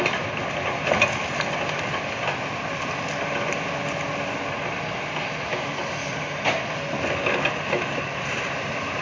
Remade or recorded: recorded